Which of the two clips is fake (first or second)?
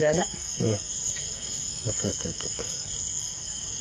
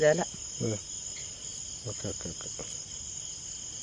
first